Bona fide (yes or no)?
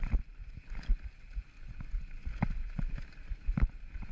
yes